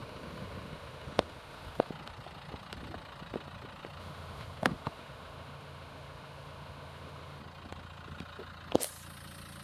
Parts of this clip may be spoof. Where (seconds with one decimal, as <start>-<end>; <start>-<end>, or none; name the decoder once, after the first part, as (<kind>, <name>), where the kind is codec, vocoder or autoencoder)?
0.0-1.9 (autoencoder, DAC-VAE); 4.0-7.4